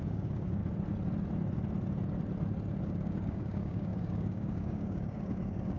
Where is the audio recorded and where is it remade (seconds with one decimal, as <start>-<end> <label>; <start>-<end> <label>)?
0.0-0.6 remade; 0.6-2.8 recorded; 2.8-5.8 remade